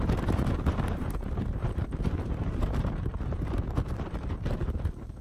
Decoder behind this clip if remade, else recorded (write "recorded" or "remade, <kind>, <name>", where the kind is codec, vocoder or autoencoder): remade, vocoder, BigVGAN v2